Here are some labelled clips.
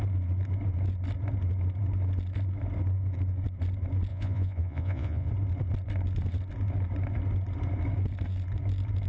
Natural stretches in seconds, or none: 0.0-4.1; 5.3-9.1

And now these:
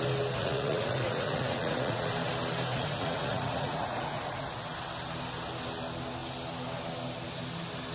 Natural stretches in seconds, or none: 0.0-0.4; 2.1-2.7; 4.6-7.9

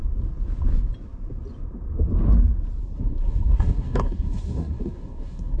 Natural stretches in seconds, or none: 0.0-2.8

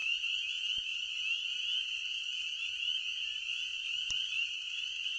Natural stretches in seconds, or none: 0.5-3.7

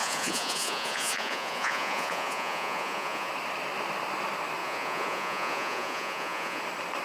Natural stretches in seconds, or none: 3.3-4.6; 6.6-7.0

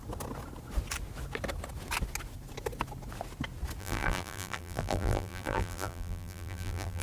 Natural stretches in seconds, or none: 0.0-3.8

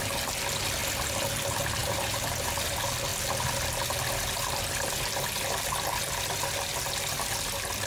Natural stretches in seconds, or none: 0.0-1.8; 2.7-7.9

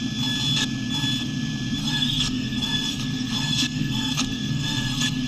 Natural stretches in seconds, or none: 0.0-1.8